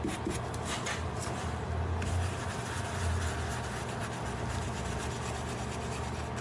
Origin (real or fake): real